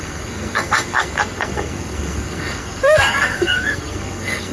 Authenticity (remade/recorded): remade